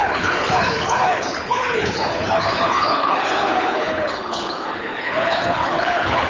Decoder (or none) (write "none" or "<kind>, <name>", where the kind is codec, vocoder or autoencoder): codec, HILCodec